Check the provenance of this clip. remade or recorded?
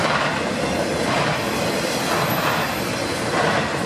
recorded